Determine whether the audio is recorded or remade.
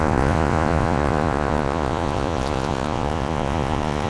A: remade